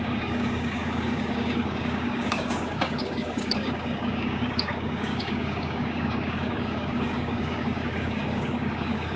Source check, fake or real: fake